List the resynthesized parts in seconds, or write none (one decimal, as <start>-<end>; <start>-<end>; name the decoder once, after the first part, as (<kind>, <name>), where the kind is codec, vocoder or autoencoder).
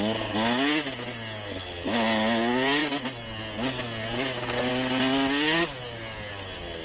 none